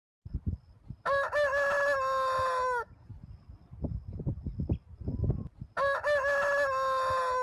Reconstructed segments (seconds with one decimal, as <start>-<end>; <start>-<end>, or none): none